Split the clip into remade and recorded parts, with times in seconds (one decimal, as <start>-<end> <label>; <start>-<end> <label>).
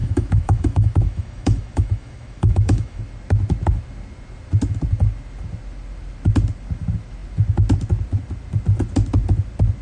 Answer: 0.0-3.0 remade; 3.0-9.8 recorded